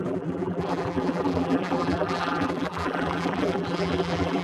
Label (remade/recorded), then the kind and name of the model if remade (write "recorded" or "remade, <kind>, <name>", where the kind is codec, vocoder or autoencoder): remade, vocoder, BigVGAN v2